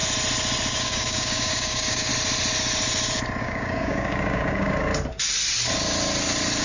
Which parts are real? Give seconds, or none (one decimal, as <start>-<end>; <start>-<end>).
0.0-0.8; 2.1-3.4; 4.9-6.6